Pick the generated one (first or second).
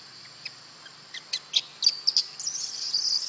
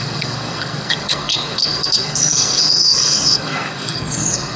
second